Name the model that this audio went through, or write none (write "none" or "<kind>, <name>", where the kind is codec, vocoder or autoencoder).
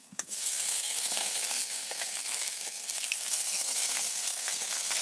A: codec, SNAC